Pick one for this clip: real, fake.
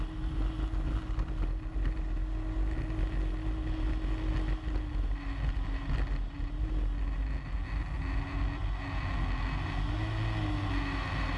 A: real